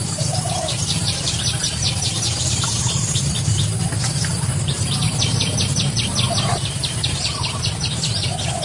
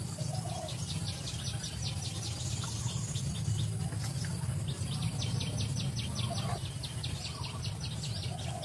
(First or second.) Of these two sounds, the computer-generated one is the first